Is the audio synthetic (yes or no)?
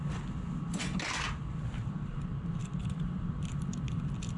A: no